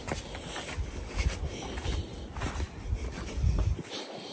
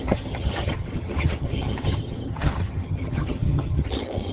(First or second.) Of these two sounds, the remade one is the second